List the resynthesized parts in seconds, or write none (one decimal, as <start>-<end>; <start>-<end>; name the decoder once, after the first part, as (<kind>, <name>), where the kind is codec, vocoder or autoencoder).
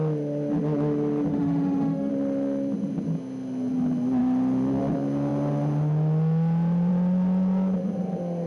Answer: 1.3-2.1 (autoencoder, DAC-VAE)